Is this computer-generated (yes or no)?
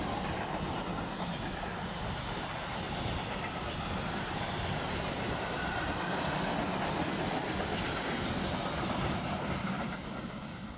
no